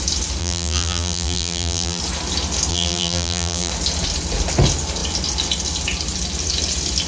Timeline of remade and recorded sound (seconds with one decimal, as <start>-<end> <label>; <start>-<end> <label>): 0.0-0.4 recorded; 0.4-2.0 remade; 2.0-2.7 recorded; 2.7-3.7 remade; 3.7-7.1 recorded